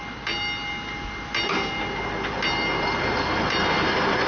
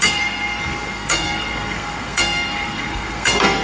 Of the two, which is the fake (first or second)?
second